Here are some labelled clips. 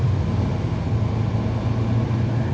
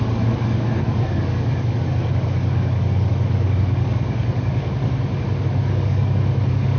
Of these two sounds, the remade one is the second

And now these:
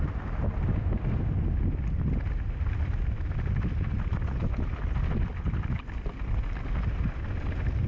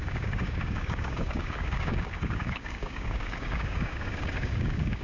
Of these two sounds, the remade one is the second